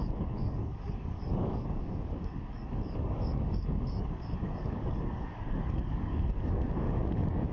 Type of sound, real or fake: fake